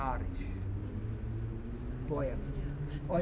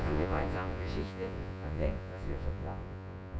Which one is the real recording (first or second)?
first